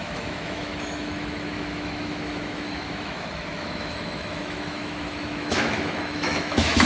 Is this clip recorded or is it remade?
remade